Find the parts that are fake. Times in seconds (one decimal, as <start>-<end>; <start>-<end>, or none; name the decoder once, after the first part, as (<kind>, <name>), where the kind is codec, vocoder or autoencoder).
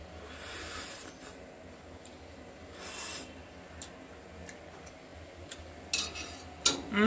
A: none